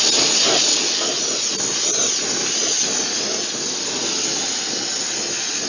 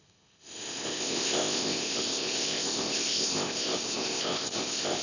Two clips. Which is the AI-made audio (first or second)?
second